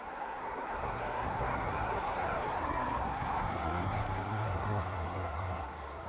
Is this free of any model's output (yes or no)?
no